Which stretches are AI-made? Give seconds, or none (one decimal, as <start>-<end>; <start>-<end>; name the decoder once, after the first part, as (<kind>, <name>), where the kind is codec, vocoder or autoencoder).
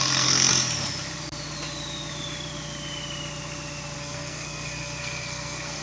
0.0-0.5 (codec, SNAC); 4.0-5.8